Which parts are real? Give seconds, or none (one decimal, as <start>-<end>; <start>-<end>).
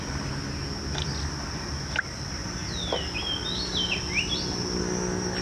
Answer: 0.0-5.4